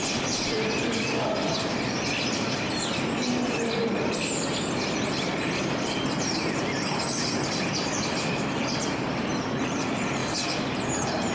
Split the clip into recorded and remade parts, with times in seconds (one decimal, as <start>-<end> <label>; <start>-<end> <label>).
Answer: 0.0-10.2 remade; 10.2-11.3 recorded